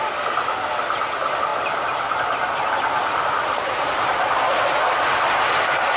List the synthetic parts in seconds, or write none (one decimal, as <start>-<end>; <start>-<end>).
none